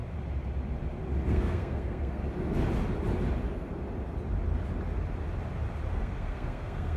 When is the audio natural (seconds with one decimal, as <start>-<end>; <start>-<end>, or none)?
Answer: 0.0-1.3; 2.2-5.9